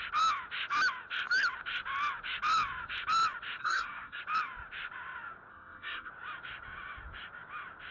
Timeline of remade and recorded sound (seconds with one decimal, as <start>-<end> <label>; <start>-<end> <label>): 0.0-3.6 recorded; 3.6-4.2 remade; 4.2-5.5 recorded; 5.5-6.1 remade; 6.1-7.9 recorded